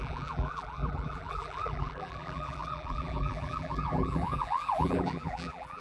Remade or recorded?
remade